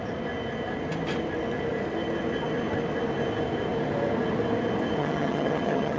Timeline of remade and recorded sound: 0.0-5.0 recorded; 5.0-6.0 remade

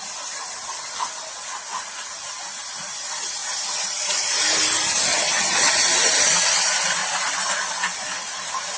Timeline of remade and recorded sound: 0.0-5.1 recorded; 5.1-5.7 remade; 5.7-8.8 recorded

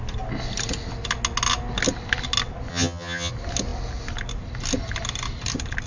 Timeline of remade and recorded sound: 0.0-2.7 recorded; 2.7-3.3 remade; 3.3-5.9 recorded

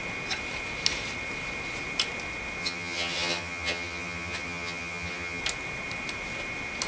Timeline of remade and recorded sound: 0.0-2.6 recorded; 2.6-5.4 remade; 5.4-6.9 recorded

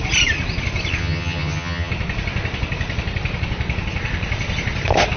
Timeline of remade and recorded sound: 0.0-1.0 recorded; 1.0-1.9 remade; 1.9-5.2 recorded

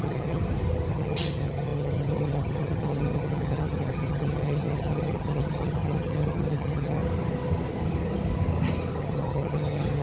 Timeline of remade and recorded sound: 0.0-0.4 remade; 0.4-0.9 recorded; 0.9-7.0 remade; 7.0-9.0 recorded; 9.0-10.0 remade